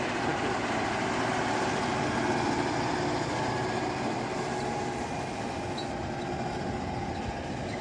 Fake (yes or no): no